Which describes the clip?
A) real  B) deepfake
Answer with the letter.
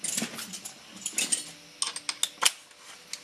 A